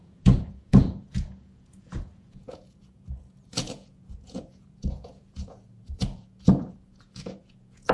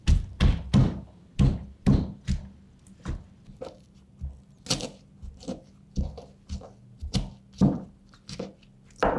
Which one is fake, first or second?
first